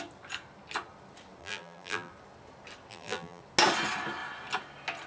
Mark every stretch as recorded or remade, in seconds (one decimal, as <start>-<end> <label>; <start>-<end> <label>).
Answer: 0.0-1.4 recorded; 1.4-2.1 remade; 2.1-2.9 recorded; 2.9-3.4 remade; 3.4-5.1 recorded